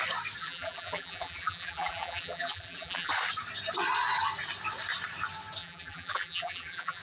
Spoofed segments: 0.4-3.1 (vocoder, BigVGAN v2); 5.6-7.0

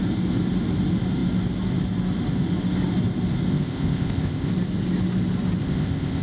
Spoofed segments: 3.5-4.5 (codec, ZipCodec); 5.6-6.2

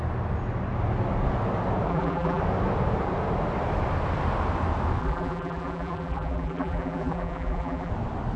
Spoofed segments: 1.9-2.4 (vocoder, BigVGAN v2); 5.0-7.9